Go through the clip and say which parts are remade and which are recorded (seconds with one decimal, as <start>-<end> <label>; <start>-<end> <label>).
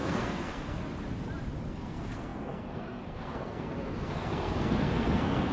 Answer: 0.0-0.8 remade; 0.8-1.7 recorded; 1.7-5.5 remade